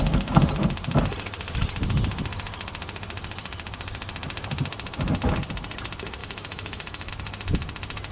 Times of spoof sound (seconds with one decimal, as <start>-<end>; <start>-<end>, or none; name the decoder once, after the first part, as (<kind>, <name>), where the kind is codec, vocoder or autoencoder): 6.2-7.1 (autoencoder, DAC-VAE)